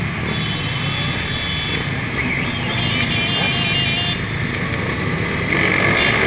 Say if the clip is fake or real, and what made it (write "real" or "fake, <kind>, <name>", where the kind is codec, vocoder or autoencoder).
real